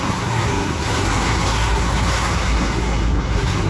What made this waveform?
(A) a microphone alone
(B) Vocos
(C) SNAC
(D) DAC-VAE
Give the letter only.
C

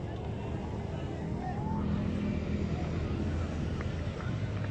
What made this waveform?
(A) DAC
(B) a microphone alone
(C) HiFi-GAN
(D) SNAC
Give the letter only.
B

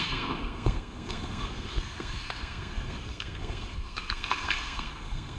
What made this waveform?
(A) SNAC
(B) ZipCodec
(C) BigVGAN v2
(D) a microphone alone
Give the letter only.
A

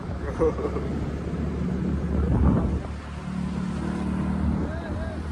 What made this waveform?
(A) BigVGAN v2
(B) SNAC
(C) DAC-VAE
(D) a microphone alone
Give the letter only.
D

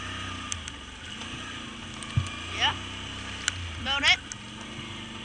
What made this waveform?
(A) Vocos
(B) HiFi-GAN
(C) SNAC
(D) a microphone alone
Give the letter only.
D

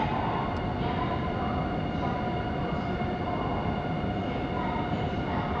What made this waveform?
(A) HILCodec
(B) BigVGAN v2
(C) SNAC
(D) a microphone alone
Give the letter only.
D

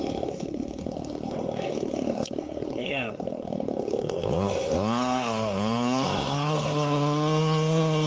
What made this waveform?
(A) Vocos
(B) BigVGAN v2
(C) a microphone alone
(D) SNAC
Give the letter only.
D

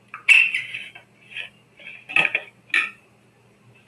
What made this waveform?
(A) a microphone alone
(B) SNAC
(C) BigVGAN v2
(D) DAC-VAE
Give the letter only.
A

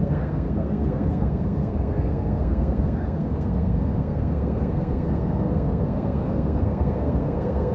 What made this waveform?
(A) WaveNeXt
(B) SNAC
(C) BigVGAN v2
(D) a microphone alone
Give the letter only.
B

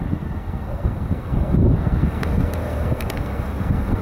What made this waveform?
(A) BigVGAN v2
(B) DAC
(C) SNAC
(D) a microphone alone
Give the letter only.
C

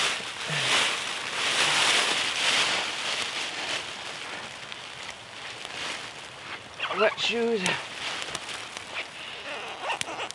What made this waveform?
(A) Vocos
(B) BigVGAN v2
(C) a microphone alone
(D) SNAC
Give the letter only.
C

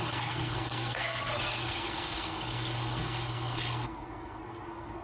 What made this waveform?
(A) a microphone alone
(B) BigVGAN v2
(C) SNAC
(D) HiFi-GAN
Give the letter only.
C